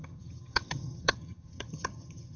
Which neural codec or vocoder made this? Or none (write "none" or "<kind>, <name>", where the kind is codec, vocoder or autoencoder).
vocoder, HiFi-GAN